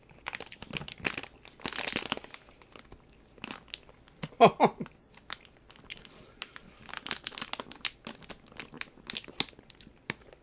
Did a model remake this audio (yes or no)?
no